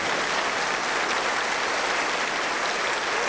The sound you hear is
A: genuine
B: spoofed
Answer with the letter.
A